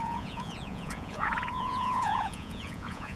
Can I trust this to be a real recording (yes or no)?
no